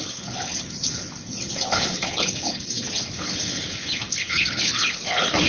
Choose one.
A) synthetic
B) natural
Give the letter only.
A